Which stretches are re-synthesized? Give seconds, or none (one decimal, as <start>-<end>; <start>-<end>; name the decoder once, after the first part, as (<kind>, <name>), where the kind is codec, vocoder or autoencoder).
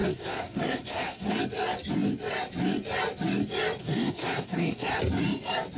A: 0.0-1.4 (codec, SNAC); 3.8-5.0